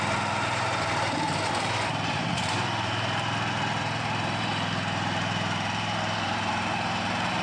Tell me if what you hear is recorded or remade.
remade